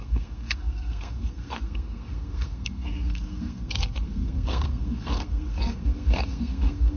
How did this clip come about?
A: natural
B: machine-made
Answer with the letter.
B